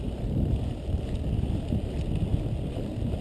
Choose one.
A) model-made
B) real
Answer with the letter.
B